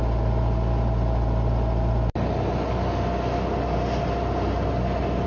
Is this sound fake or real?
real